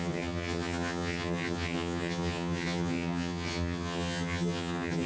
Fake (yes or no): yes